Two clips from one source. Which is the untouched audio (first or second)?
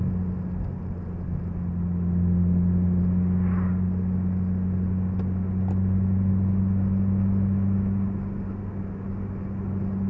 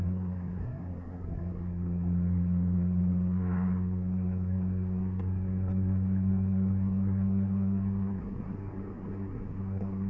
first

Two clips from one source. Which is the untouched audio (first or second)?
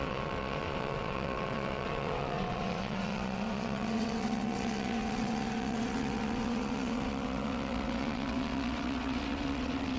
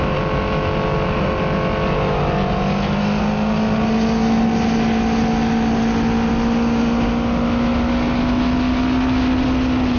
second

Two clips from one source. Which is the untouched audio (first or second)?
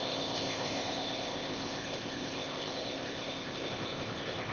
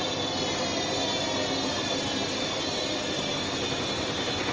second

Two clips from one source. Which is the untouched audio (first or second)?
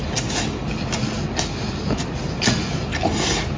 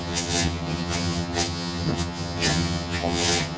first